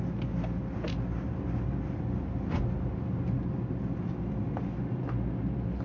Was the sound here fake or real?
real